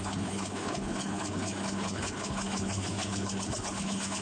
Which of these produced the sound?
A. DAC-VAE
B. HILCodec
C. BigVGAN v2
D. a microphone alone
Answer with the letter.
B